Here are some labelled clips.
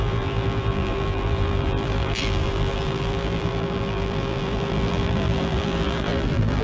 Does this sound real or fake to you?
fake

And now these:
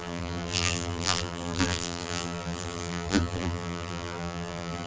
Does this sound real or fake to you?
fake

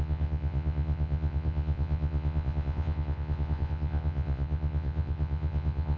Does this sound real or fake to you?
fake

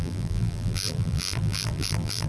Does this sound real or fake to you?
fake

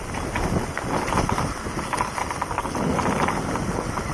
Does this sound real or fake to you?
real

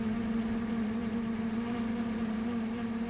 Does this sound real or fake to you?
real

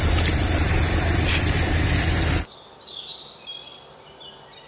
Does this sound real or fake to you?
real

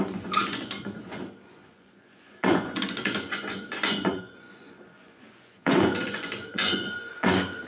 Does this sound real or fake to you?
fake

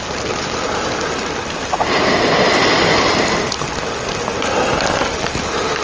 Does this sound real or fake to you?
real